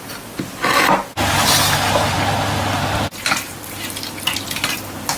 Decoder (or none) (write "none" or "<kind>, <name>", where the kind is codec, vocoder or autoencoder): none